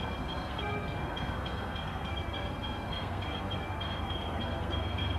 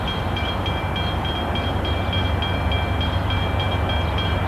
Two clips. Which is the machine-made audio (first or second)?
first